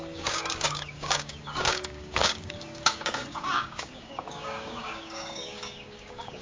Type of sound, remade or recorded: remade